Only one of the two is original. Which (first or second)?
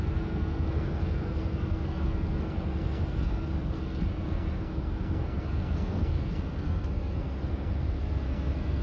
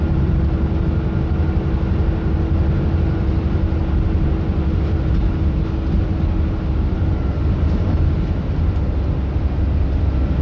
second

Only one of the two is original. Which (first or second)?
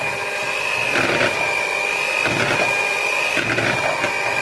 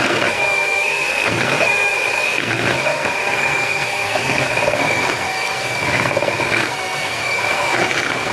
first